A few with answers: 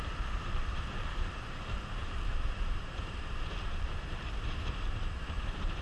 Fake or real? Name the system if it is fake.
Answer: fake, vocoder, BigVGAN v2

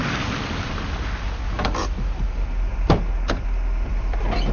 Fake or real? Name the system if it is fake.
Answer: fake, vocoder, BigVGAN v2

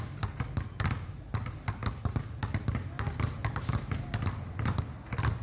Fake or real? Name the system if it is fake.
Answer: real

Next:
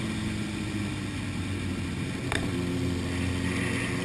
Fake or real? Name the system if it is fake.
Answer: real